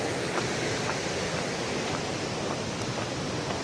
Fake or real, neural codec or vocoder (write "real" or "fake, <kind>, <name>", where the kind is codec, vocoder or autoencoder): real